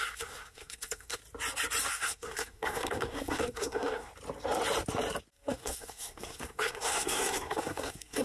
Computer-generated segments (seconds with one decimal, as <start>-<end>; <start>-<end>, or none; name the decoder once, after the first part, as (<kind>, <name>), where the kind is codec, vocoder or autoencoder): 0.0-1.2 (codec, SNAC); 1.9-4.1; 5.3-8.2